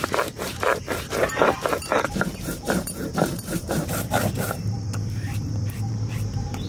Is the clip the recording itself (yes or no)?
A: no